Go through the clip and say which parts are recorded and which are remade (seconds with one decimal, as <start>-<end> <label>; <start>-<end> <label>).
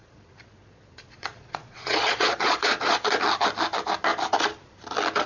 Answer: 0.0-3.2 remade; 3.2-5.3 recorded